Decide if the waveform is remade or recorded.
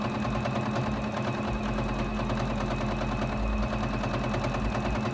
recorded